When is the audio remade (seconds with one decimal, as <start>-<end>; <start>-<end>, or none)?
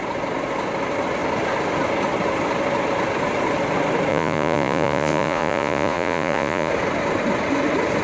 4.1-6.7